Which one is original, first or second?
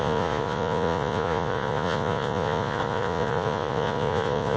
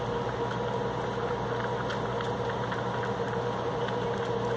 second